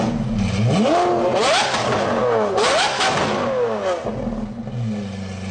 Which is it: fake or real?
real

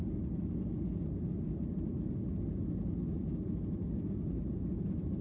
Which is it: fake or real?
real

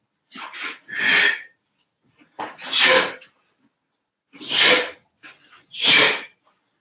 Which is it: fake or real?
real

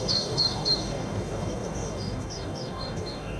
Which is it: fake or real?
fake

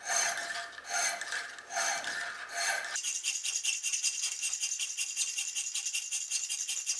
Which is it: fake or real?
real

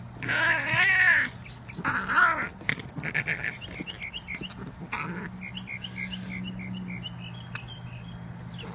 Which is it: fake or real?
real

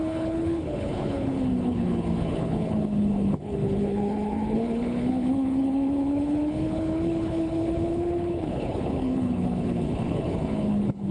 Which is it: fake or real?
fake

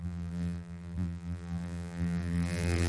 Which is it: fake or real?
fake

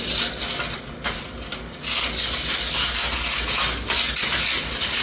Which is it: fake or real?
real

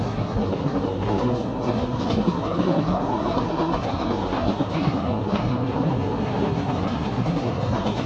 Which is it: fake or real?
fake